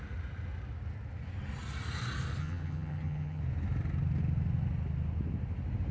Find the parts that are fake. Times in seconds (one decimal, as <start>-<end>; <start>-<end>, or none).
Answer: 2.4-3.4